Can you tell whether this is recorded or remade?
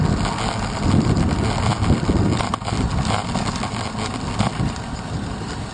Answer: recorded